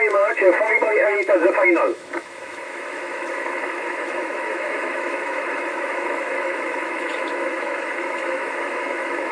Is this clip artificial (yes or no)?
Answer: yes